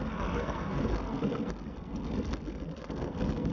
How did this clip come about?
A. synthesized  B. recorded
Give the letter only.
A